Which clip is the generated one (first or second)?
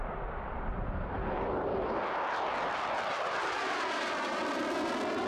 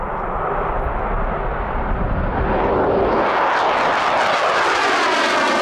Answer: first